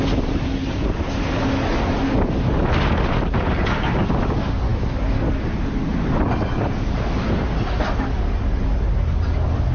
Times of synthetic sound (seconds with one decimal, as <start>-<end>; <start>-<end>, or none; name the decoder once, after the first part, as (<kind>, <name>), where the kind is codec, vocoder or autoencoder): none